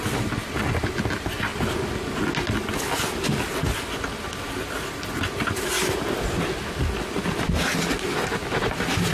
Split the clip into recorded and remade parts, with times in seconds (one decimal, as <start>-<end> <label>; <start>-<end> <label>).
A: 0.0-9.1 recorded

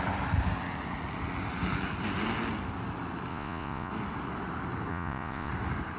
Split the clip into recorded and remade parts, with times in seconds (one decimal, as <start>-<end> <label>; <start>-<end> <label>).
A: 0.0-3.3 recorded; 3.3-3.9 remade; 3.9-4.9 recorded; 4.9-5.5 remade; 5.5-6.0 recorded